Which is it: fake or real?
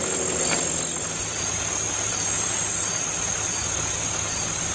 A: real